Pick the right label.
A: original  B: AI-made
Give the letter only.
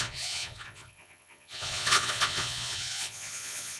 B